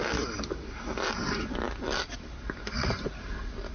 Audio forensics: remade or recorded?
recorded